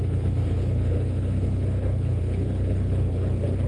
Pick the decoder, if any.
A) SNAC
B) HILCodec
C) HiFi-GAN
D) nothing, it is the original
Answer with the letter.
B